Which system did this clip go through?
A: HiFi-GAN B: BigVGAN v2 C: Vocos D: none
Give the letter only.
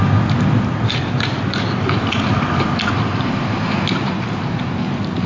D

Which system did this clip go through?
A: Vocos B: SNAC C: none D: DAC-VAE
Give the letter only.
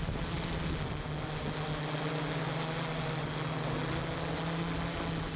C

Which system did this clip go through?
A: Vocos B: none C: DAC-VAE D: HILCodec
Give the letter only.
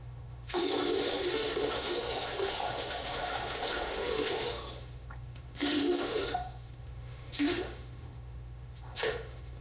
C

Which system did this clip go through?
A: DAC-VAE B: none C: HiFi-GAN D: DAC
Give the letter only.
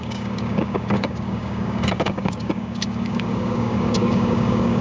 D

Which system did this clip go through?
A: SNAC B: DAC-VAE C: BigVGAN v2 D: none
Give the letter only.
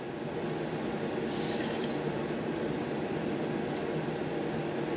D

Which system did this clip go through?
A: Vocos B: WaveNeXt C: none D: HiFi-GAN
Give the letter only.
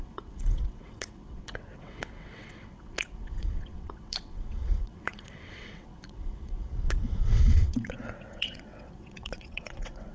B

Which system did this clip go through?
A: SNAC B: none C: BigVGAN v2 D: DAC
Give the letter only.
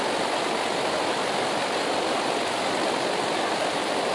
B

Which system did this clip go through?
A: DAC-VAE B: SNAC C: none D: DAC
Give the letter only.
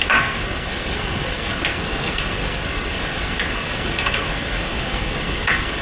B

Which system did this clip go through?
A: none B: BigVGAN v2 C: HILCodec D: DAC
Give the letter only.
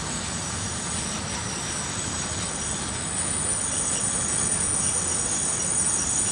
A